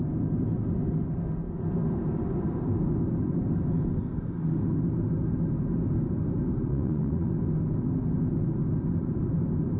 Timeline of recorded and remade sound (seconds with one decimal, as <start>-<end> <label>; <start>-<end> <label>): 0.0-6.7 recorded; 6.7-7.3 remade; 7.3-9.8 recorded